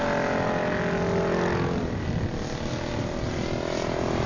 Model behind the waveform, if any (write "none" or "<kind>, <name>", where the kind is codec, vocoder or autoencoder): none